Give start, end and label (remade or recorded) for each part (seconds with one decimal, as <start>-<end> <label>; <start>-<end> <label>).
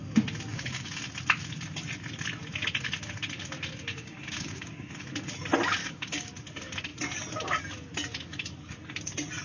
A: 0.0-0.5 recorded; 0.5-1.0 remade; 1.0-3.9 recorded; 3.9-5.1 remade; 5.1-5.8 recorded; 5.8-6.3 remade; 6.3-9.4 recorded